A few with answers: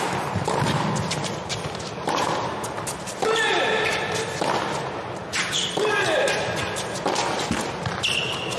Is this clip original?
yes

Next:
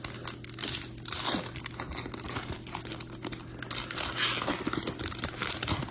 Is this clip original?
yes